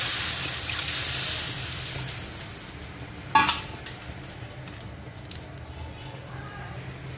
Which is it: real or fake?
real